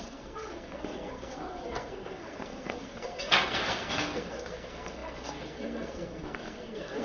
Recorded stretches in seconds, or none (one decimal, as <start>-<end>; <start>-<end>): none